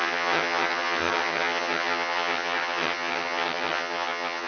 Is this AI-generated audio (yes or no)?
yes